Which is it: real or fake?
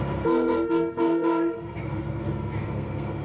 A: fake